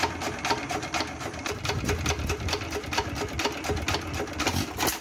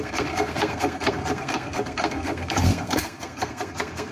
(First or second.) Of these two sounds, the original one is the first